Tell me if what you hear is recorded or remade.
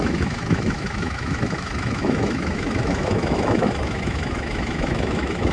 remade